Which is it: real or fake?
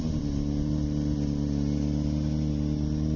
real